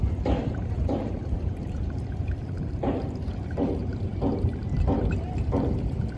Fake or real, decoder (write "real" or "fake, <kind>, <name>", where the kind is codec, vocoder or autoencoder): fake, vocoder, BigVGAN v2